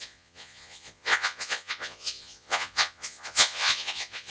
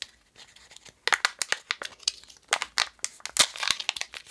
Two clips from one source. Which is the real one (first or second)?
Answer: second